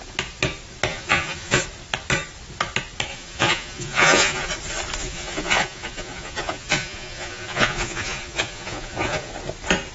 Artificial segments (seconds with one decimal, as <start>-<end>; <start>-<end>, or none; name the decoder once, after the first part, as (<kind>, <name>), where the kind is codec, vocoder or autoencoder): 0.9-1.6 (vocoder, Vocos); 3.1-4.5; 5.0-9.3

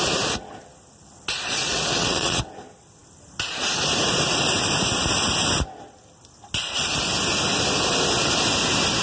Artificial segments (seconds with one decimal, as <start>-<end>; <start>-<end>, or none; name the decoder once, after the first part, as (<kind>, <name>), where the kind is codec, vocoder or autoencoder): 1.6-2.5 (vocoder, WaveNeXt)

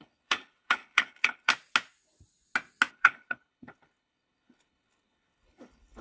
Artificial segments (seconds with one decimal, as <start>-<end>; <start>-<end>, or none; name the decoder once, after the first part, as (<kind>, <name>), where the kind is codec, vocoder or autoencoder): 0.0-1.5 (codec, HILCodec); 2.9-6.0